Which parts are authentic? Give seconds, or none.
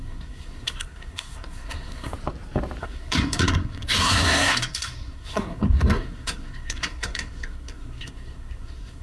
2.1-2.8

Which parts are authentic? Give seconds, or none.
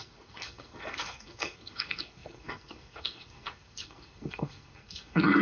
none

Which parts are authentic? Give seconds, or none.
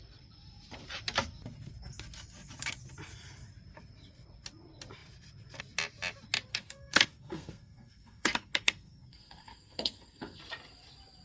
0.0-6.5; 10.4-11.2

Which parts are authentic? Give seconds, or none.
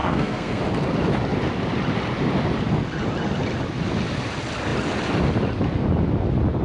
0.6-6.6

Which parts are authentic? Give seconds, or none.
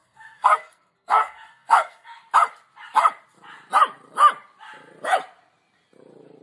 2.2-6.4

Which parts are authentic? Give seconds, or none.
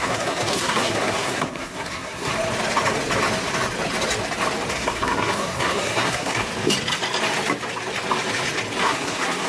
2.3-4.7; 6.5-8.8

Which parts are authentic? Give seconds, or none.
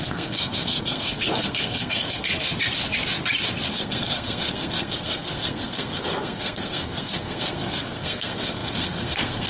2.3-3.7